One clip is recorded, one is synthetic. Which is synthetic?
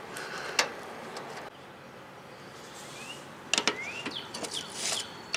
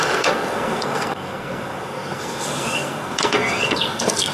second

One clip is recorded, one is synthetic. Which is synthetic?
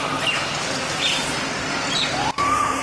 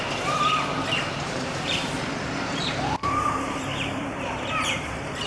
second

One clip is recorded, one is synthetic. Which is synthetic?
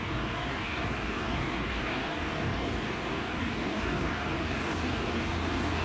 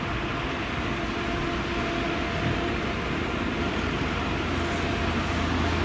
first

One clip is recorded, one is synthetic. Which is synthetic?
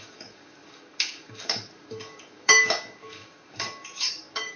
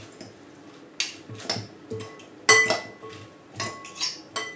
first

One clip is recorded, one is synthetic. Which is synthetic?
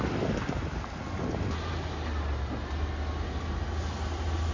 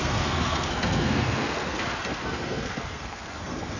second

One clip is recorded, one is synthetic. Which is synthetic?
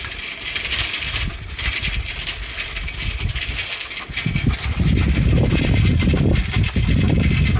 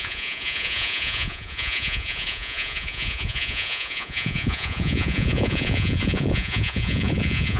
second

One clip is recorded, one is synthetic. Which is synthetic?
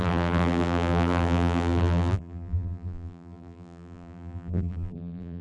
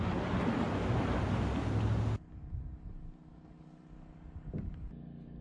first